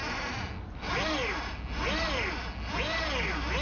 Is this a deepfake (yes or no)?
no